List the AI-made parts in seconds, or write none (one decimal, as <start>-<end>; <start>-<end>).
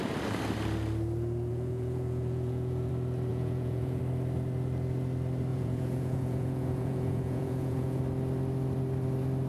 1.5-2.9; 3.3-4.0; 5.5-8.0